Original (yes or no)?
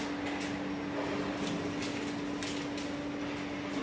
yes